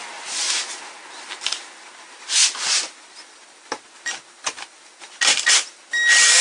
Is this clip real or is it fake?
real